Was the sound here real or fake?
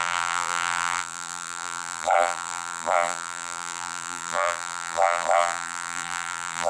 fake